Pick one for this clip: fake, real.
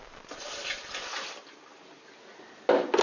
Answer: real